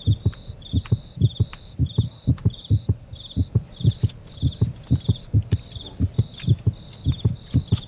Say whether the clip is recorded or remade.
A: recorded